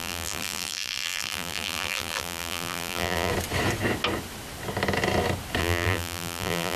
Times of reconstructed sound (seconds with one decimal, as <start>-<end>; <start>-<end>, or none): 0.0-3.3; 5.6-6.8